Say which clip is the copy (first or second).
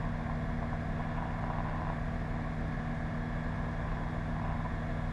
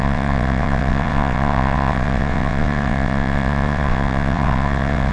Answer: second